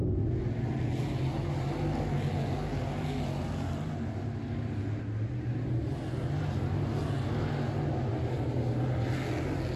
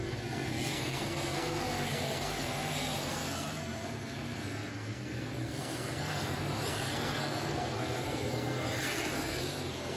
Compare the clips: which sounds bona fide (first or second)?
first